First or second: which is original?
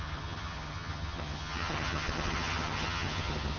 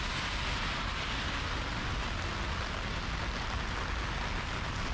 second